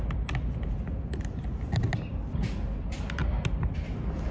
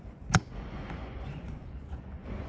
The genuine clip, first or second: first